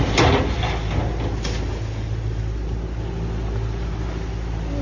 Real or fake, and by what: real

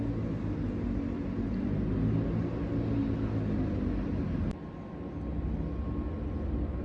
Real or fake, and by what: real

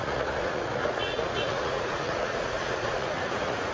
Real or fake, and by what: fake, vocoder, Vocos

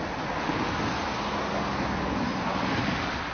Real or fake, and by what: real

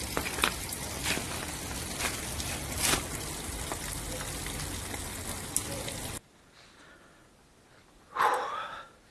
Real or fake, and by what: real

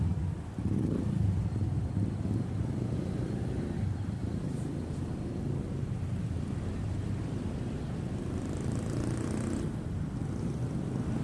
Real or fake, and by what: real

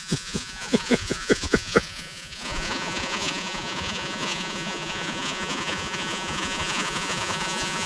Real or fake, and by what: fake, vocoder, Vocos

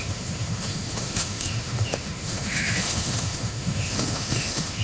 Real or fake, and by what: fake, autoencoder, DAC-VAE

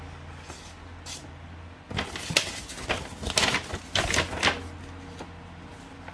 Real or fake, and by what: real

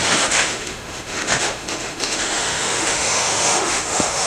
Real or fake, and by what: fake, autoencoder, DAC-VAE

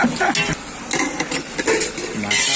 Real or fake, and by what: real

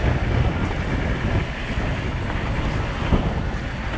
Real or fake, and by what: real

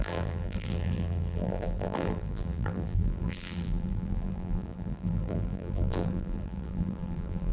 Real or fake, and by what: fake, vocoder, BigVGAN v2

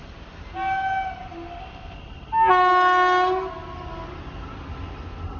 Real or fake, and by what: real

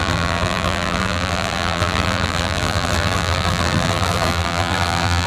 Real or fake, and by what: fake, vocoder, BigVGAN v2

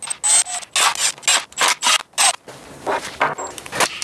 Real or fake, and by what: real